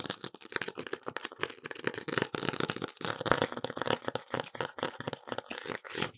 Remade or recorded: recorded